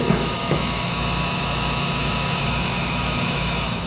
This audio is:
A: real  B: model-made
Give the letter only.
B